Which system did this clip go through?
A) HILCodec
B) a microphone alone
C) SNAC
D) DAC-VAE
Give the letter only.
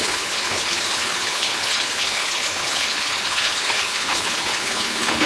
A